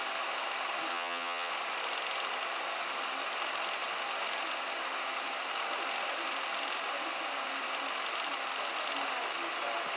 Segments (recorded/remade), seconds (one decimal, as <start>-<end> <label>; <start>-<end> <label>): 0.0-0.9 recorded; 0.9-1.5 remade; 1.5-10.0 recorded